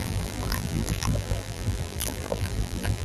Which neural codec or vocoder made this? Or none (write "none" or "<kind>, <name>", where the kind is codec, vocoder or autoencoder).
vocoder, BigVGAN v2